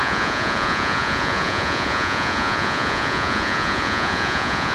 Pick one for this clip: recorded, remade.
remade